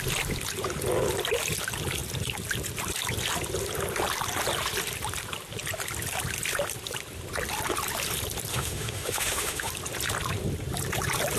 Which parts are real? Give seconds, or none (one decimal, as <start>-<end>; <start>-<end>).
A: 0.0-8.5; 9.7-11.4